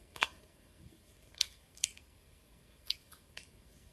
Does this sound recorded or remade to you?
remade